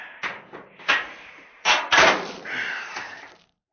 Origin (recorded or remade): remade